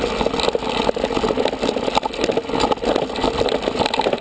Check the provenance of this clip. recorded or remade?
recorded